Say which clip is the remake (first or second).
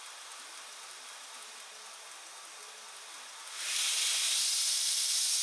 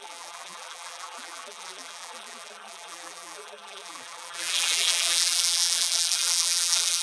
second